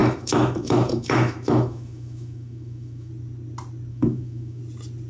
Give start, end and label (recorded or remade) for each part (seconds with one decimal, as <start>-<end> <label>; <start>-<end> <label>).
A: 0.0-3.1 remade; 3.1-3.9 recorded; 3.9-4.6 remade; 4.6-5.1 recorded